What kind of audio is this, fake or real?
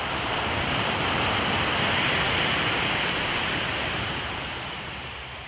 real